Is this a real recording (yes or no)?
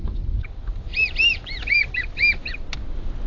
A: yes